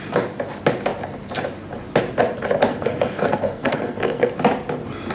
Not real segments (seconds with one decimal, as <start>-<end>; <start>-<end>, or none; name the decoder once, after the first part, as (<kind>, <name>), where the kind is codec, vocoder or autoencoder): 2.7-4.3 (codec, SNAC)